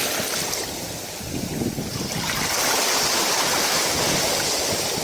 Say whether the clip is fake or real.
real